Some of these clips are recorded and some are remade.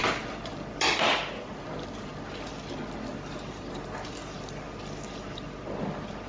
recorded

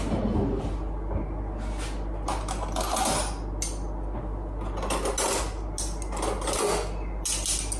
recorded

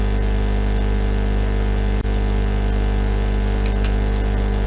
recorded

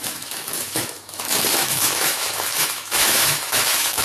remade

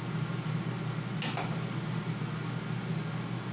recorded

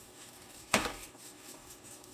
remade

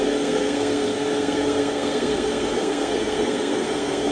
remade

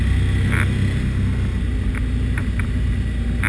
recorded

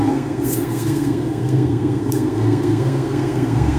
remade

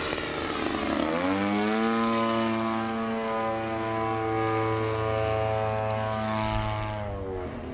recorded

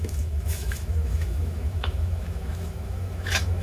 remade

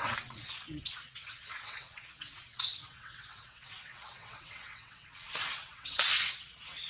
remade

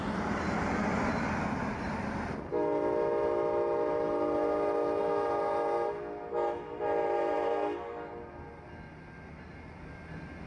recorded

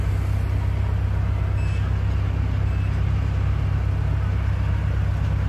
recorded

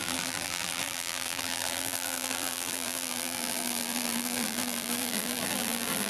remade